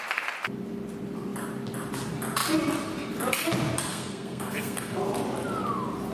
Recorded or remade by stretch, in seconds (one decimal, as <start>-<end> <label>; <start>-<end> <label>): 0.0-3.9 recorded; 3.9-5.0 remade; 5.0-6.1 recorded